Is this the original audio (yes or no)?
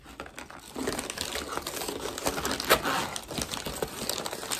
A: yes